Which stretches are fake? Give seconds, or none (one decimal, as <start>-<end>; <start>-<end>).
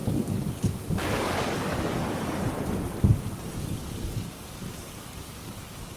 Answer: 0.0-2.5; 3.6-6.0